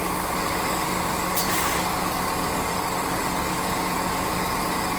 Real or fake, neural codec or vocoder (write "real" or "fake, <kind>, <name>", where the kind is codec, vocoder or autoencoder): fake, codec, DAC